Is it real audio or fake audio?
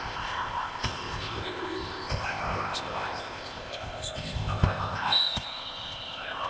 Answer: fake